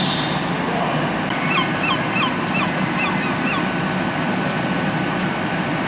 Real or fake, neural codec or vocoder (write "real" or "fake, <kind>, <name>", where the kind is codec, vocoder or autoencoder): real